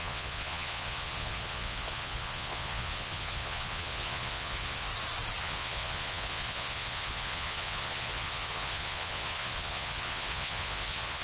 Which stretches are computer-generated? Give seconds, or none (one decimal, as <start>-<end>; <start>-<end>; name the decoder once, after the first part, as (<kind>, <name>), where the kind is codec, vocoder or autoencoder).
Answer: 0.0-4.9 (vocoder, Vocos); 5.4-11.2